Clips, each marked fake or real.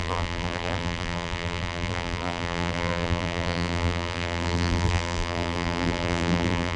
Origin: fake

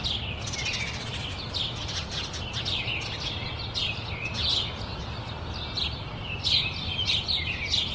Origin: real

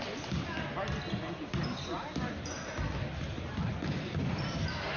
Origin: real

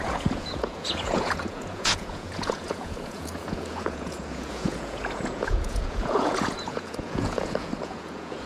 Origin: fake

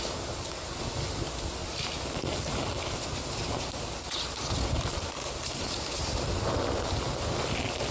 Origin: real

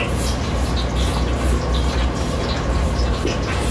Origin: real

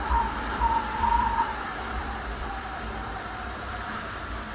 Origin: fake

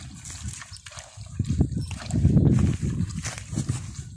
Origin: real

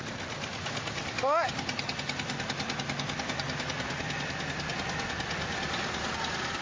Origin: real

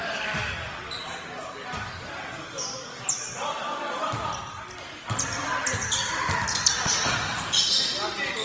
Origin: real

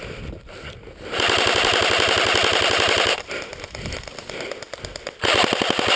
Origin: real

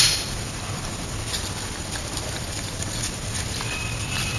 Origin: fake